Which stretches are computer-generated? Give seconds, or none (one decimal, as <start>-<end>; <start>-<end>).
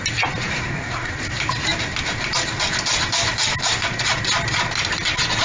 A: 0.5-1.1